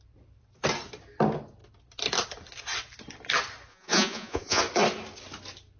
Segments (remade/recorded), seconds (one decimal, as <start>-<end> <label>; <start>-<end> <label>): 0.0-3.7 recorded; 3.7-4.6 remade; 4.6-5.8 recorded